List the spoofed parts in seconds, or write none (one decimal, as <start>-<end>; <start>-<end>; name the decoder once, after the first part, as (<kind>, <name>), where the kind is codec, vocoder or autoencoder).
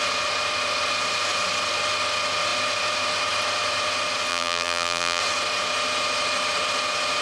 4.3-5.2 (vocoder, BigVGAN v2)